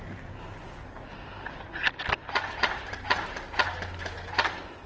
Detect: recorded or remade recorded